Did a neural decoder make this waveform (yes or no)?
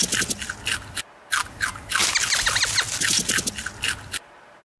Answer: no